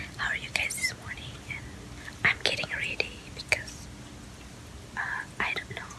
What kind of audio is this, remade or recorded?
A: recorded